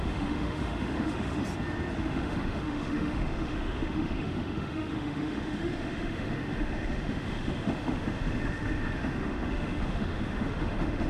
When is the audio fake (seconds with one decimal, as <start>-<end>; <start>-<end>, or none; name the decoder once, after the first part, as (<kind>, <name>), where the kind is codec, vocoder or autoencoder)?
0.0-1.4 (autoencoder, DAC-VAE); 2.0-11.1